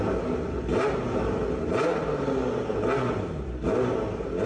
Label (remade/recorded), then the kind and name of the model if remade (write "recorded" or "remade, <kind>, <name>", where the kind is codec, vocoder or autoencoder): recorded